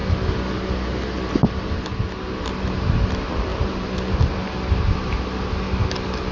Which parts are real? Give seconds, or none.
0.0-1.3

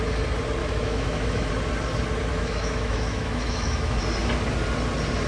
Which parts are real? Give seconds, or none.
0.0-0.6; 1.5-2.3; 4.0-5.3

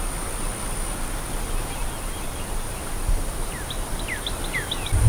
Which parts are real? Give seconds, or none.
0.0-1.8; 4.3-5.1